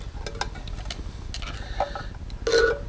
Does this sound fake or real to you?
real